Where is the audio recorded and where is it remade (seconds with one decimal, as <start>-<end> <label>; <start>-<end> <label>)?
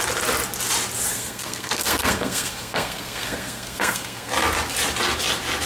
0.0-1.1 recorded; 1.1-4.3 remade; 4.3-5.7 recorded